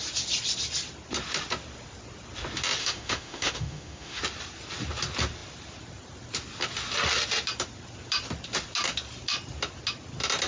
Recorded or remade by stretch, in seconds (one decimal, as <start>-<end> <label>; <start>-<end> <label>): 0.0-2.8 recorded; 2.8-4.2 remade; 4.2-10.5 recorded